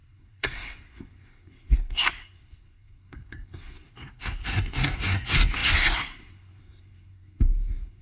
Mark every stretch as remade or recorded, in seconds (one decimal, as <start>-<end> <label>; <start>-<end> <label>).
0.0-8.0 remade